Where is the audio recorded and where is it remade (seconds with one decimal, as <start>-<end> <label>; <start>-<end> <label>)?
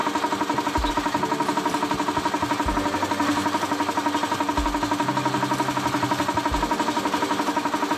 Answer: 0.0-8.0 recorded